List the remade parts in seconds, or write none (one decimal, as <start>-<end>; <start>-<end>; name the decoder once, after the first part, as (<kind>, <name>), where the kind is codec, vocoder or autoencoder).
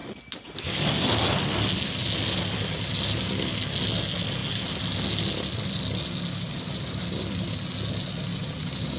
none